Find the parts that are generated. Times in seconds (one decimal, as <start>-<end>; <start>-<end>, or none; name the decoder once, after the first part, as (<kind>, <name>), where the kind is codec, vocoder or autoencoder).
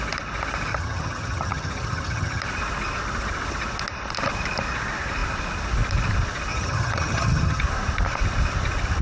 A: 0.7-2.4 (vocoder, HiFi-GAN); 6.5-7.6